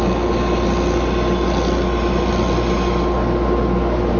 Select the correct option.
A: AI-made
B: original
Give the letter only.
B